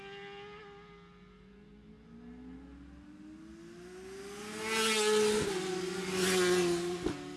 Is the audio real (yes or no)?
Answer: yes